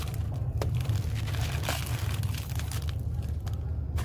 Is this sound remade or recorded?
recorded